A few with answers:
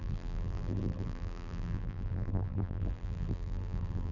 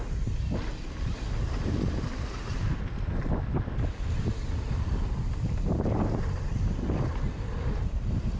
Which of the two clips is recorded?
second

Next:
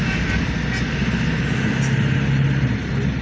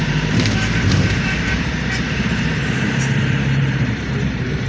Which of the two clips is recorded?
first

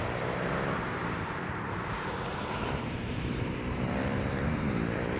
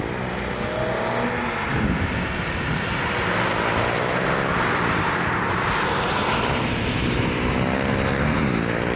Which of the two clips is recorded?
second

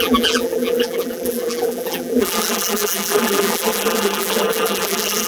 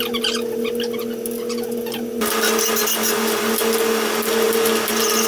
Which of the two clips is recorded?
second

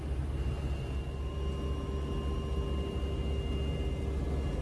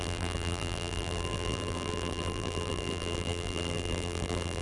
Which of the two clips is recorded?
first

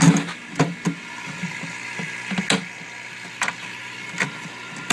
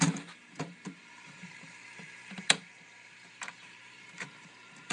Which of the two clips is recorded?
first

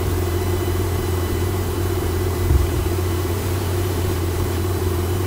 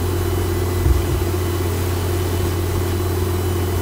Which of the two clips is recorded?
second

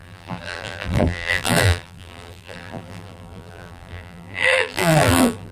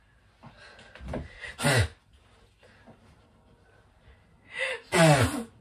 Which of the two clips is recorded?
second